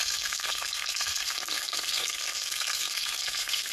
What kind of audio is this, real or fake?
fake